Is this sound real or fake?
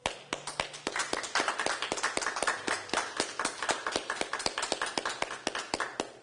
real